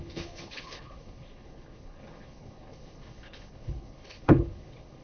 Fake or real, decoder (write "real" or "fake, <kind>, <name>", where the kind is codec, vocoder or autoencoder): fake, codec, HILCodec